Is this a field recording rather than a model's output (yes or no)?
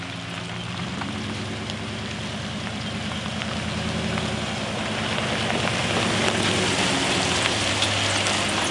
yes